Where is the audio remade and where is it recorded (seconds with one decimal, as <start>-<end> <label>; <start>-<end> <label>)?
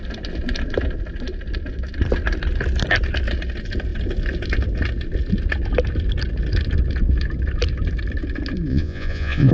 0.0-8.7 recorded; 8.7-9.5 remade